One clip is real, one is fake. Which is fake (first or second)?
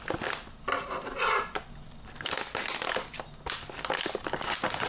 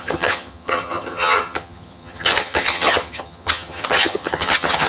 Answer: second